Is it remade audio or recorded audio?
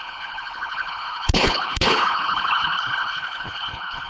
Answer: remade